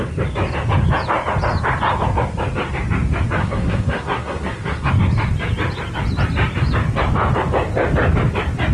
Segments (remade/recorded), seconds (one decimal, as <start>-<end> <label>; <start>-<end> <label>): 0.0-3.4 recorded; 3.4-4.9 remade; 4.9-8.7 recorded